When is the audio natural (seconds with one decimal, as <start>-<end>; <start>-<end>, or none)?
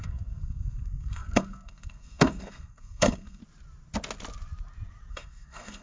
3.4-5.1